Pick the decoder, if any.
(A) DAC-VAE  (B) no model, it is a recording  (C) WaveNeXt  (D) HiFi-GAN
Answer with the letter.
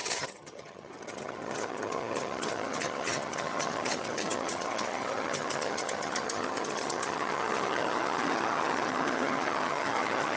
D